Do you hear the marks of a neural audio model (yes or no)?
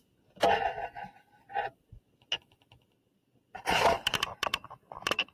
no